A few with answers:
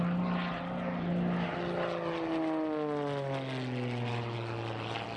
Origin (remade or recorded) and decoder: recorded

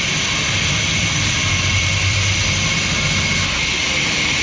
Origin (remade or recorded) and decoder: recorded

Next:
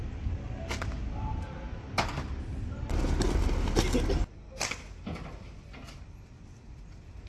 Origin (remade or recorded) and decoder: recorded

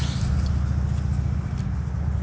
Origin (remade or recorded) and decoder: recorded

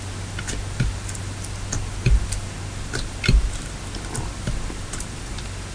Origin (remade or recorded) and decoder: recorded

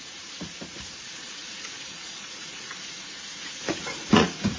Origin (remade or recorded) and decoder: remade, vocoder, Vocos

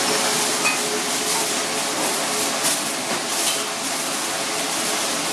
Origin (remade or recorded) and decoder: recorded